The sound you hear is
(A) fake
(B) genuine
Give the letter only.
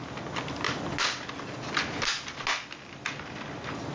B